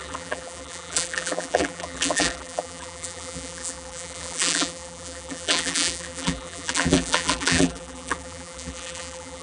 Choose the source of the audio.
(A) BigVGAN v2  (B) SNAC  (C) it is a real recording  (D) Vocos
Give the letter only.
A